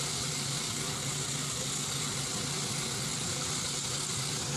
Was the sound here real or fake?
real